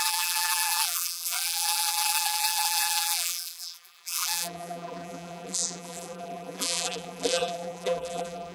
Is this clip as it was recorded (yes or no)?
no